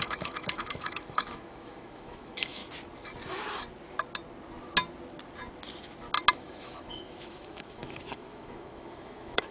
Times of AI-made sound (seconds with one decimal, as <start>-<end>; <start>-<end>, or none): 0.0-2.6; 6.3-9.5